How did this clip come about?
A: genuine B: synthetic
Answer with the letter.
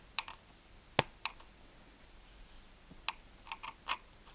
A